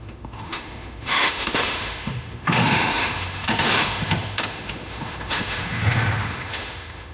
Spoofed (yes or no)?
yes